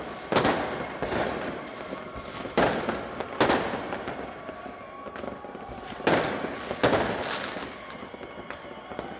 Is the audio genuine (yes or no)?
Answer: yes